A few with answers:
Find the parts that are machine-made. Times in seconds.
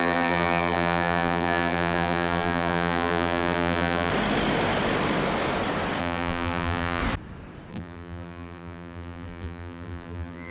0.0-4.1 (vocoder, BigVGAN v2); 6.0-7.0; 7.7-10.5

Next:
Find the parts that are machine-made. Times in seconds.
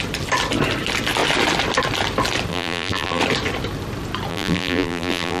2.5-3.2 (vocoder, BigVGAN v2); 4.3-5.4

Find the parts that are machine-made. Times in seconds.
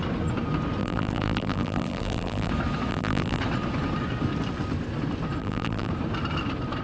0.8-2.5 (vocoder, BigVGAN v2); 2.9-3.4; 5.4-5.9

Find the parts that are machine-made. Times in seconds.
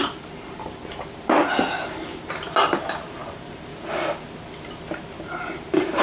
0.0-3.7 (vocoder, BigVGAN v2); 4.7-6.0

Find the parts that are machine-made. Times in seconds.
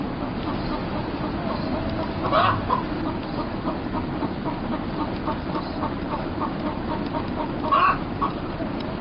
5.2-6.6 (vocoder, BigVGAN v2); 8.0-9.0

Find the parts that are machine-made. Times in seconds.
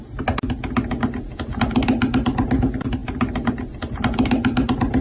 3.0-3.7 (vocoder, BigVGAN v2)